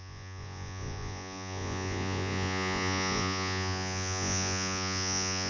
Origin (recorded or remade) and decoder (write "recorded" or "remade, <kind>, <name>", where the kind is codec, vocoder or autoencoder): remade, vocoder, Vocos